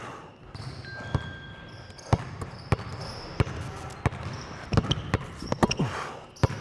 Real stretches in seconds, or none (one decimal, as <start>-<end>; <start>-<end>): 0.0-6.6